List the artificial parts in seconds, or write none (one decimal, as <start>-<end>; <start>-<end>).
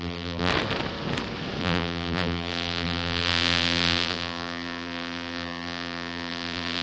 0.0-0.5; 1.6-6.8